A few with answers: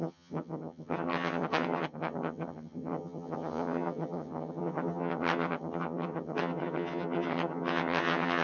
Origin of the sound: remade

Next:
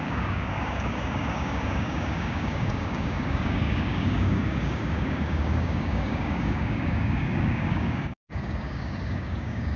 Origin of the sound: remade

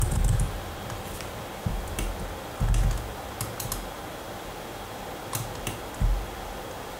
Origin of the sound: recorded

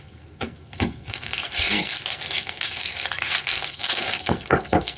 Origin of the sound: remade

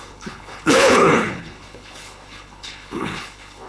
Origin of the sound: remade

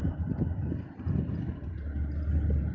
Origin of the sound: recorded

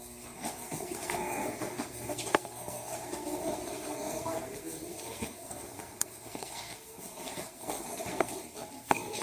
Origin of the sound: remade